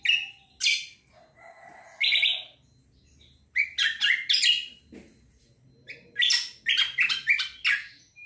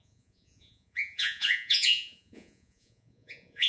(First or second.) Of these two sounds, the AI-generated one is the second